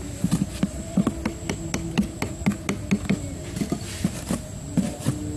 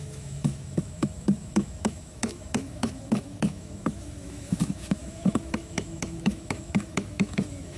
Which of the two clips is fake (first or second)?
second